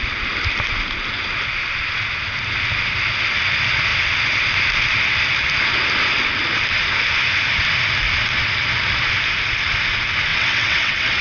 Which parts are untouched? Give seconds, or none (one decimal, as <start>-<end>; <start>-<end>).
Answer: 0.0-10.3